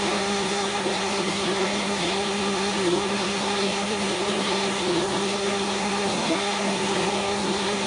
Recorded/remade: remade